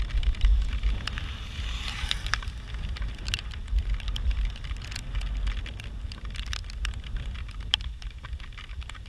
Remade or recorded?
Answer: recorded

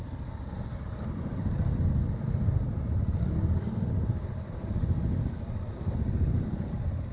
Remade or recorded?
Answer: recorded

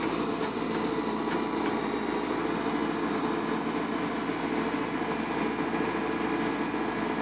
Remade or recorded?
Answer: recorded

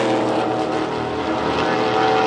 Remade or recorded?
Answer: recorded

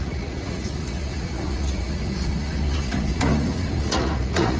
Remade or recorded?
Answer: remade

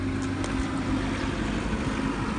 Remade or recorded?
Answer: recorded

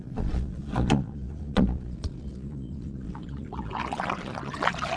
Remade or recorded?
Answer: remade